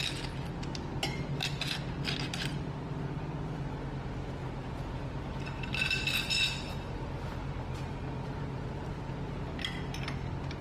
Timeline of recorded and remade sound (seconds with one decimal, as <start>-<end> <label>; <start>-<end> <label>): 0.0-4.4 recorded; 4.4-9.6 remade; 9.6-10.6 recorded